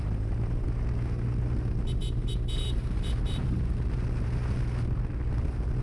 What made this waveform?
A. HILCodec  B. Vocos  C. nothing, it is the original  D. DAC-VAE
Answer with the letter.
C